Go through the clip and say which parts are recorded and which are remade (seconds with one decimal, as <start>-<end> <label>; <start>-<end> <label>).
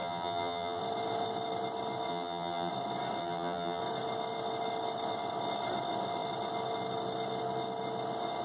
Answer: 0.0-0.8 remade; 0.8-2.1 recorded; 2.1-2.7 remade; 2.7-3.2 recorded; 3.2-3.8 remade; 3.8-8.4 recorded